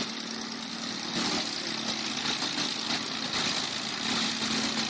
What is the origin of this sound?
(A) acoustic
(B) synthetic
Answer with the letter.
A